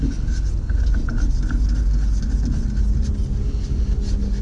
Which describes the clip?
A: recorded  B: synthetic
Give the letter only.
A